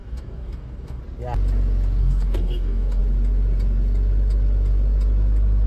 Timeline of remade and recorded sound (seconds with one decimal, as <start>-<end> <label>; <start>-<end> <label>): 0.0-1.0 remade; 1.0-2.0 recorded; 2.0-3.0 remade; 3.0-5.7 recorded